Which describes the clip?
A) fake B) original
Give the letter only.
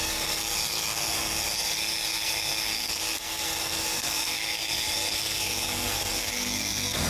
A